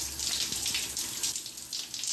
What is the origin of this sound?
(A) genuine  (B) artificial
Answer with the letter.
A